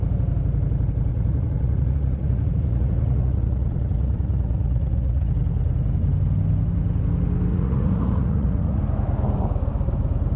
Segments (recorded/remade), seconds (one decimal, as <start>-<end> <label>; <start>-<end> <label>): 0.0-1.1 recorded; 1.1-5.3 remade; 5.3-7.5 recorded; 7.5-8.8 remade; 8.8-10.4 recorded